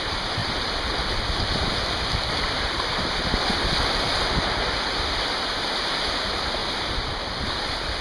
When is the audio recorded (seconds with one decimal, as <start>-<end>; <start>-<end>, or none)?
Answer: 0.0-0.4; 4.3-6.6; 7.3-8.0